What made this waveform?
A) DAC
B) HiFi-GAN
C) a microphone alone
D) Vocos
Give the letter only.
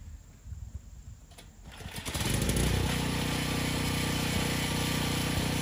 C